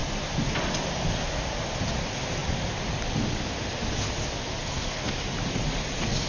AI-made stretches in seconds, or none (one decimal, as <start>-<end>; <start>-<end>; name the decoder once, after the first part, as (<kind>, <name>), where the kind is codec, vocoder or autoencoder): 4.6-5.1 (codec, SNAC)